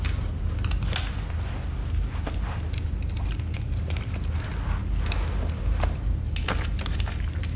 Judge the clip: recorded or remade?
recorded